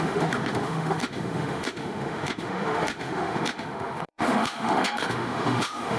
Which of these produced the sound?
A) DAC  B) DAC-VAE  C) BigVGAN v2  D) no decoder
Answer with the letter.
B